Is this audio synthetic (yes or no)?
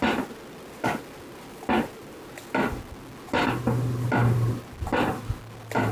yes